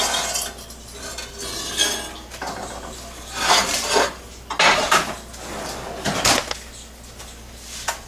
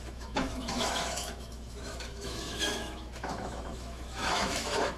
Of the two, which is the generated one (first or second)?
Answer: second